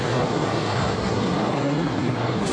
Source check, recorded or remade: remade